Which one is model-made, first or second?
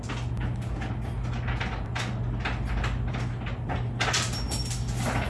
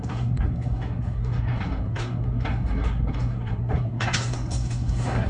second